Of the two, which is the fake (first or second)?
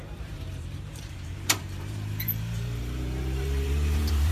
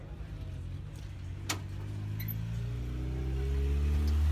first